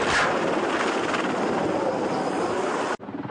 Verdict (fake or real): real